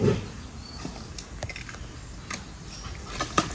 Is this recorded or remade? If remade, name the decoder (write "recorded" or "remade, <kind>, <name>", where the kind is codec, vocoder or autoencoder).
recorded